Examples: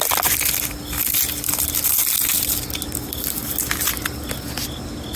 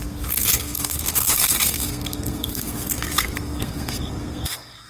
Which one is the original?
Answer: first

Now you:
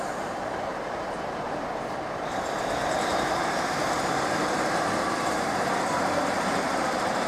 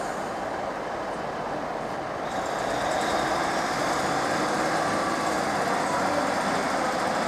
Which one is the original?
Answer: second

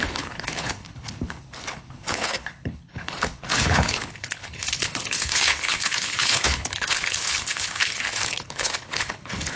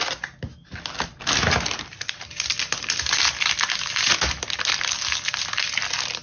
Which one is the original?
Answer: second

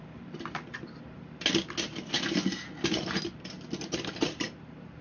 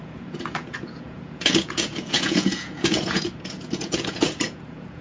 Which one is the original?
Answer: first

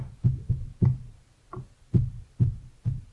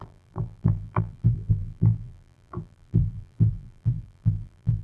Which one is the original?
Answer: first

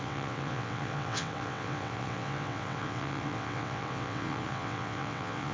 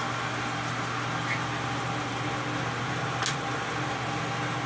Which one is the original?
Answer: second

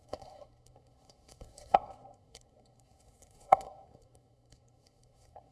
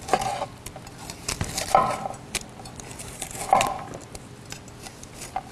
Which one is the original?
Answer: second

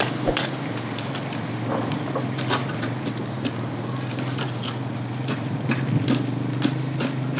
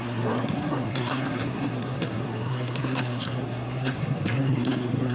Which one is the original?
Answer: first